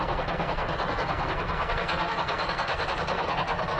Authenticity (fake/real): fake